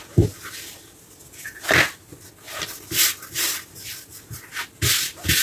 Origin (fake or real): real